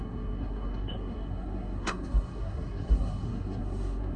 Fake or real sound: fake